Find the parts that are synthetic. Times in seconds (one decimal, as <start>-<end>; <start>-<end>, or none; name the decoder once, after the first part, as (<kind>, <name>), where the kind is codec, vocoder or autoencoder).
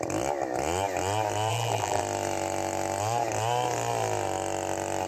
1.5-2.0 (vocoder, BigVGAN v2)